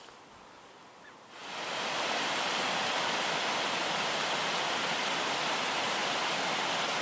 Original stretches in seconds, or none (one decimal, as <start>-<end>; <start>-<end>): 0.0-7.0